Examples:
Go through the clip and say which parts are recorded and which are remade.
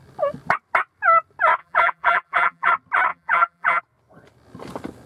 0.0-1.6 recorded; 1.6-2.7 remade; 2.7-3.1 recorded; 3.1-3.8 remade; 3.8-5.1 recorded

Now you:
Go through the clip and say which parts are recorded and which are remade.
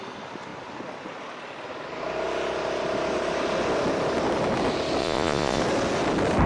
0.0-5.0 recorded; 5.0-5.6 remade; 5.6-6.5 recorded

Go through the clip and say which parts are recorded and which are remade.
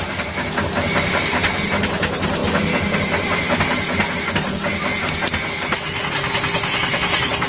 0.0-7.5 recorded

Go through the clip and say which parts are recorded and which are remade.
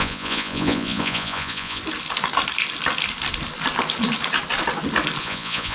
0.0-1.8 remade; 1.8-5.2 recorded; 5.2-5.7 remade